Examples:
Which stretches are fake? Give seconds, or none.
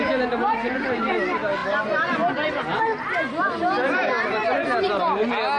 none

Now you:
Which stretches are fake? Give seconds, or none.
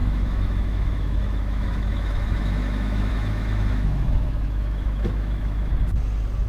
0.0-5.7 (autoencoder, DAC-VAE)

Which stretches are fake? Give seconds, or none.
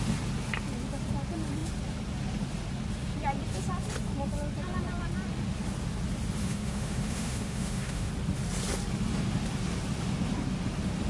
6.4-8.1 (autoencoder, DAC-VAE)